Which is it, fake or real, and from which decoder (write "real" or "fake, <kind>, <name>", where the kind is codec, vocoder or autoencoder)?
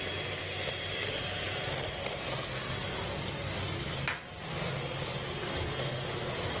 real